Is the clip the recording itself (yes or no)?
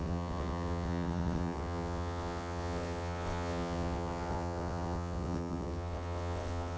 no